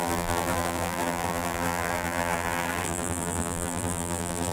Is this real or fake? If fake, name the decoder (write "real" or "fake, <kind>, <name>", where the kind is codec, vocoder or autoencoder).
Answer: fake, vocoder, BigVGAN v2